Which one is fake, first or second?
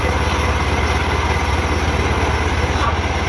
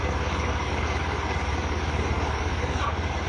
second